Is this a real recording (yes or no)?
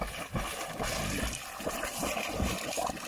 yes